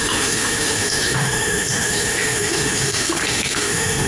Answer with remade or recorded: remade